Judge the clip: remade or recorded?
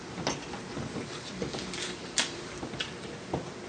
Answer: recorded